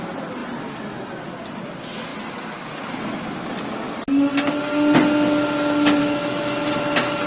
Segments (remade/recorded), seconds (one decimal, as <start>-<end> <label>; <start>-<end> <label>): 0.0-6.0 recorded; 6.0-6.7 remade; 6.7-7.3 recorded